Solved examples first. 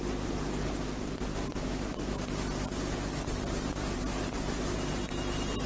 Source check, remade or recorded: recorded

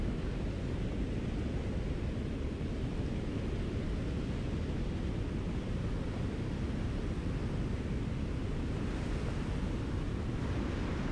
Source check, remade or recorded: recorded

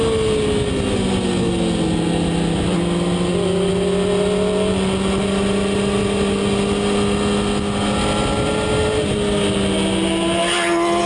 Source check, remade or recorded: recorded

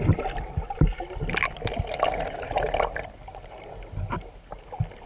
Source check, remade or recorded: recorded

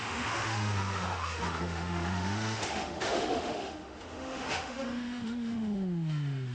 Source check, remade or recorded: remade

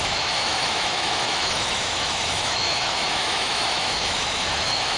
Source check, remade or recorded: remade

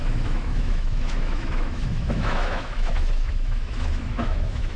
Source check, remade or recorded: remade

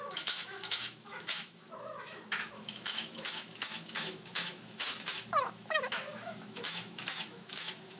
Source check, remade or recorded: remade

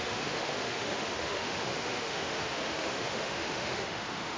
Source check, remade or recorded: remade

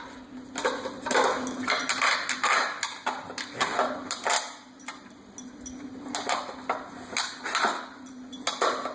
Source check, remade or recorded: recorded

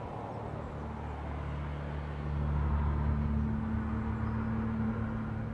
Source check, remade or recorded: recorded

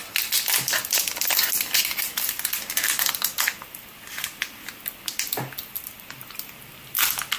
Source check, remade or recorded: recorded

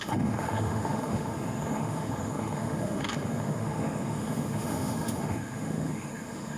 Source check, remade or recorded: remade